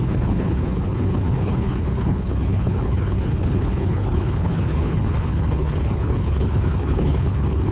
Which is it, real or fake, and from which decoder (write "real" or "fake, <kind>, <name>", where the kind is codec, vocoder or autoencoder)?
fake, codec, HILCodec